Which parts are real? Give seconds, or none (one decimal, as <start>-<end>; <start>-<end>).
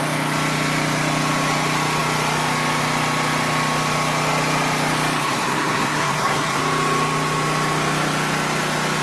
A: 0.0-5.2; 6.6-9.0